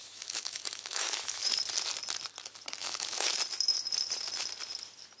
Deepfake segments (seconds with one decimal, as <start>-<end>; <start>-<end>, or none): 0.0-1.6; 2.8-3.3